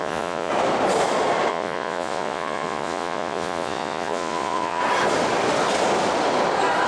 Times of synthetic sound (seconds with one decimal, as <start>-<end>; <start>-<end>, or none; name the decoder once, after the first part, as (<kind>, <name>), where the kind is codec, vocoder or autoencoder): 0.0-0.5 (vocoder, Vocos); 1.5-4.8